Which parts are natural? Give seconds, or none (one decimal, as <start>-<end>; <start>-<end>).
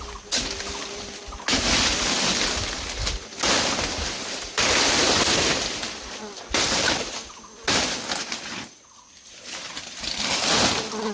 0.0-11.1